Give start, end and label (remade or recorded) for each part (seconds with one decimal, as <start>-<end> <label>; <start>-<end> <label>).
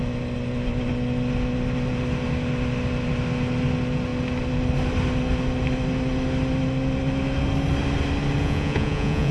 0.0-8.4 recorded; 8.4-9.3 remade